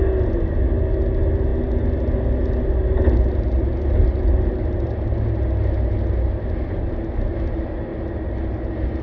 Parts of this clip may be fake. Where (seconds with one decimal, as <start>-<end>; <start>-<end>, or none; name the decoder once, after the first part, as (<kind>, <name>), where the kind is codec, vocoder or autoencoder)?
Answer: none